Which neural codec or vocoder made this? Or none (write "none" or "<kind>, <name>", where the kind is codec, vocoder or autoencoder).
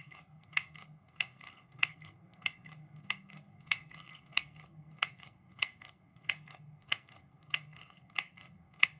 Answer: codec, SNAC